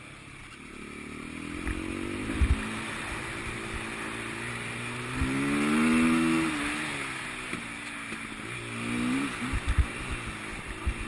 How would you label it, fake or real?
real